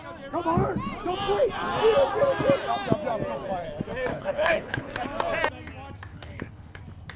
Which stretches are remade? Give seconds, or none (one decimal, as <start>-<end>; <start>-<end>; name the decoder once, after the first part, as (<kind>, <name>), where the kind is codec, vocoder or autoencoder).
4.1-4.9 (codec, HILCodec); 6.1-6.8